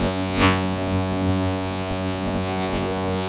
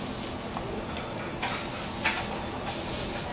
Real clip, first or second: second